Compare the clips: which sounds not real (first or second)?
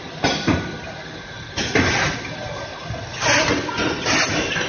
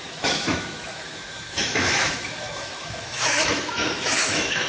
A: second